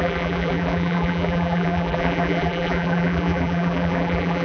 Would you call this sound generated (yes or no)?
yes